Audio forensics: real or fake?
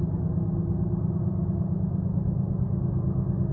real